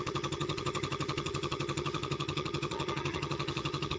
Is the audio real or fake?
fake